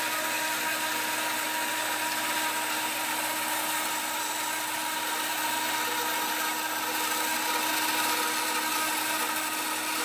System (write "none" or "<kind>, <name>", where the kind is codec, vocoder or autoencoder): none